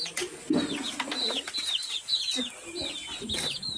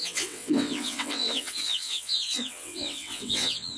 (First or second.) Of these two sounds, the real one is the first